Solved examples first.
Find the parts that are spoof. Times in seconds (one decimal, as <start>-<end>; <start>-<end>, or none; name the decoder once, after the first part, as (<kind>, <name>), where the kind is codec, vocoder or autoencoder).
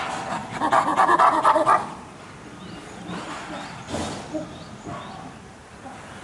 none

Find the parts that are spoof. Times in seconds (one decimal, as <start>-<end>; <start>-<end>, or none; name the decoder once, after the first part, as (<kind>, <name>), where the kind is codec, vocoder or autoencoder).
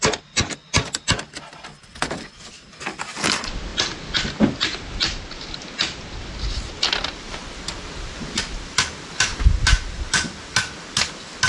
none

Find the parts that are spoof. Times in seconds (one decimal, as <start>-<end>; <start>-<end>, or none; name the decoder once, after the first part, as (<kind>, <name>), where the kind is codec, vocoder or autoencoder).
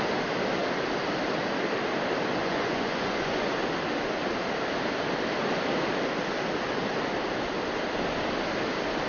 2.4-3.5 (vocoder, Vocos)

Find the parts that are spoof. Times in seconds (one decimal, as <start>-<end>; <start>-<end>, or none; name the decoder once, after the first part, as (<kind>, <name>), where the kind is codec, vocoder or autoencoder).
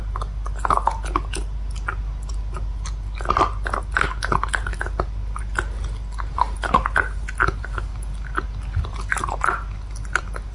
none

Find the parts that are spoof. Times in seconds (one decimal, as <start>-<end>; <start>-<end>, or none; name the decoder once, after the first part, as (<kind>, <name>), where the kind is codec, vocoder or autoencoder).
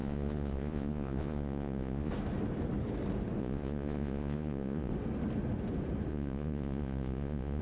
0.0-2.1 (vocoder, Vocos); 3.4-4.9; 6.1-7.6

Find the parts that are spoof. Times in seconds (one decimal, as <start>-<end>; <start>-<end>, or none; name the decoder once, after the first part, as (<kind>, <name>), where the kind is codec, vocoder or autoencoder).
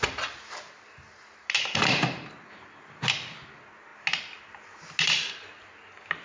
none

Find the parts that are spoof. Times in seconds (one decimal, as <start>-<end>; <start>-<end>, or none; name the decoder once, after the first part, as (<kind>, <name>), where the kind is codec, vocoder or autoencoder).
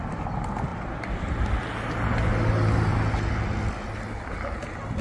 none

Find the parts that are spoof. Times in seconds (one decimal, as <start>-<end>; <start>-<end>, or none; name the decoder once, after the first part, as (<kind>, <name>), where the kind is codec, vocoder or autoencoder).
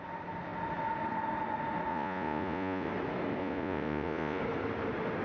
1.9-2.9 (vocoder, Vocos); 3.4-4.4